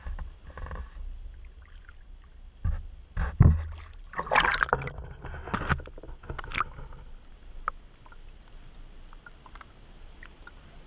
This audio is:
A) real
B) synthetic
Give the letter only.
A